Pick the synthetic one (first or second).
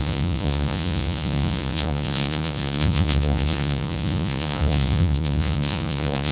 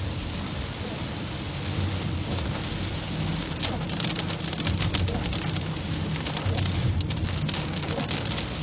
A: first